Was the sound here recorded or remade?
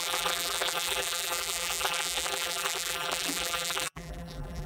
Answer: remade